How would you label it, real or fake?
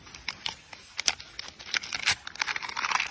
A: real